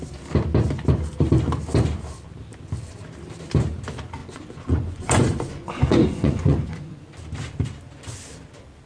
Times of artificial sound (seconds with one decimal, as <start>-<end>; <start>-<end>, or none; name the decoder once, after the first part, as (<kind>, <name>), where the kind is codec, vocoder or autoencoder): 4.2-7.0 (vocoder, Vocos)